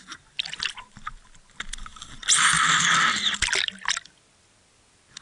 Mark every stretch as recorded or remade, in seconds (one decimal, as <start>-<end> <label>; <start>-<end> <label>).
0.0-5.2 recorded